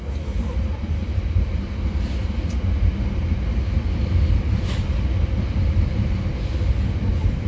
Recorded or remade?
recorded